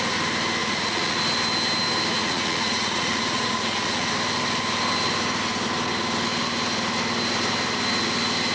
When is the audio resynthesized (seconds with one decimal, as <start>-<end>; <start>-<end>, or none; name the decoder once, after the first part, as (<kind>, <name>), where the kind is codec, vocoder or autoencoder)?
0.6-1.2 (vocoder, Vocos); 2.2-4.1